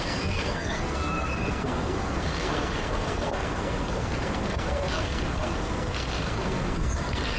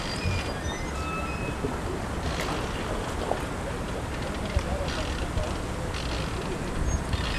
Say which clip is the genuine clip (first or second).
second